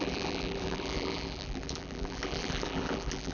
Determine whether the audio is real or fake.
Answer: fake